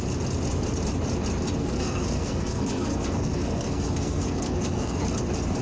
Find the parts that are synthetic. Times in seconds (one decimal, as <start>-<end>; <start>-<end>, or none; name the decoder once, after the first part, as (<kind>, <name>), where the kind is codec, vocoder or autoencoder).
1.6-5.0 (codec, SNAC)